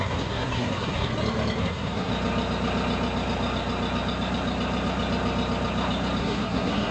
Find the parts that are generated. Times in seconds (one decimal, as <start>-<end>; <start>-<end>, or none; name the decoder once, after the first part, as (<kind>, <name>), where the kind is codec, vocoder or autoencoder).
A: 0.0-1.1 (codec, SNAC); 1.6-2.1; 6.2-6.9